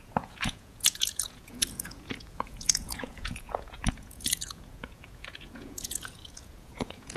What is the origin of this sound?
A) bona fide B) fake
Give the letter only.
B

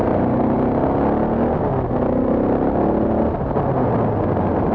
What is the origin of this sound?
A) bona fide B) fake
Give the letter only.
A